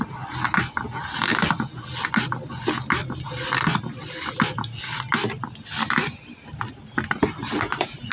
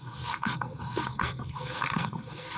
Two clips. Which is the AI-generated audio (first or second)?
second